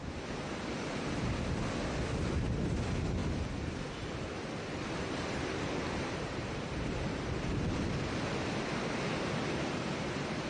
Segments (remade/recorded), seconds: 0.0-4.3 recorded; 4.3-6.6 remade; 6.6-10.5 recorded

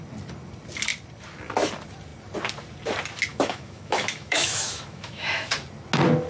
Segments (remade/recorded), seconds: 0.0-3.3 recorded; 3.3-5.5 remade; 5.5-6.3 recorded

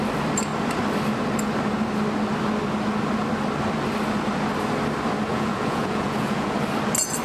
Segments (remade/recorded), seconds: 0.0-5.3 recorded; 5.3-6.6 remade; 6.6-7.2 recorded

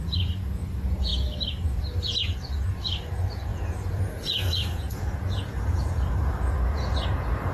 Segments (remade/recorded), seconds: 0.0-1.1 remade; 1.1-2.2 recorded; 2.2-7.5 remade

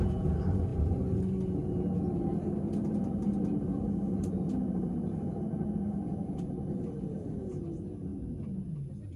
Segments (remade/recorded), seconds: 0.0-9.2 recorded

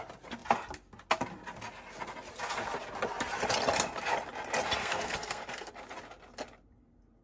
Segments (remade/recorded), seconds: 0.0-4.8 recorded; 4.8-5.7 remade; 5.7-7.2 recorded

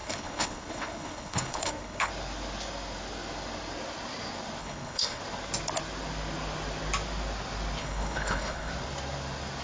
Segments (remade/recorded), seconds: 0.0-2.1 remade; 2.1-4.6 recorded; 4.6-5.2 remade; 5.2-7.8 recorded; 7.8-8.7 remade; 8.7-9.6 recorded

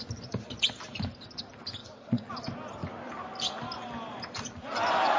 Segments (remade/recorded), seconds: 0.0-1.8 recorded; 1.8-2.3 remade; 2.3-5.2 recorded